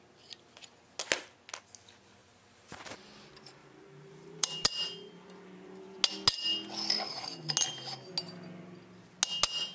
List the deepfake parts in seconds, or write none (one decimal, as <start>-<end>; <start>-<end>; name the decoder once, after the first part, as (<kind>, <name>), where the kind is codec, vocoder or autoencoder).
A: 2.2-3.0 (vocoder, BigVGAN v2); 3.6-6.0